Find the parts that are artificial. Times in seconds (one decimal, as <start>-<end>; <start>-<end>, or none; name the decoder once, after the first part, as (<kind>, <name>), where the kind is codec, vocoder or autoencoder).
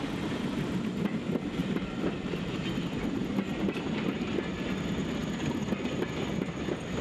1.6-2.7 (vocoder, BigVGAN v2)